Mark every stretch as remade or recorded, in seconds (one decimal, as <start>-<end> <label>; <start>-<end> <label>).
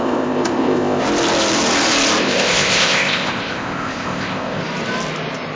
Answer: 0.0-1.0 remade; 1.0-2.2 recorded; 2.2-4.6 remade; 4.6-5.6 recorded